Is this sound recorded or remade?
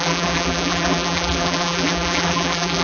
remade